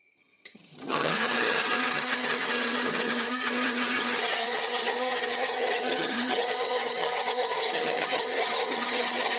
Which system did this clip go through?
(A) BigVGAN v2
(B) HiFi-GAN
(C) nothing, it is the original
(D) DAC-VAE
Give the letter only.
B